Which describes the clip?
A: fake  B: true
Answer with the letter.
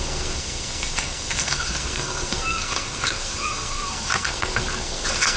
A